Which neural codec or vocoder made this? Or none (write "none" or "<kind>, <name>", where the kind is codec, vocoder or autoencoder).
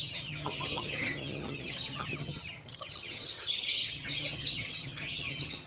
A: vocoder, HiFi-GAN